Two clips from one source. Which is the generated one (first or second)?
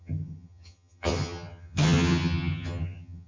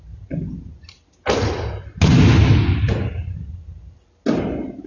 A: first